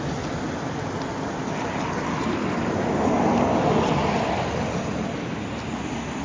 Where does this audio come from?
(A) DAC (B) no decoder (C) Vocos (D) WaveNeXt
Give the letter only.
B